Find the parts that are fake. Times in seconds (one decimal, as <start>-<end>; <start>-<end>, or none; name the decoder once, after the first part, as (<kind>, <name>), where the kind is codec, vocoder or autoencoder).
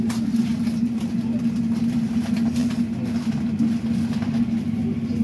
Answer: none